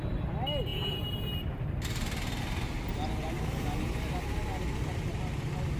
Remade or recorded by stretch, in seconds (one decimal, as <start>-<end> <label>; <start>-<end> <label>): 0.0-5.8 recorded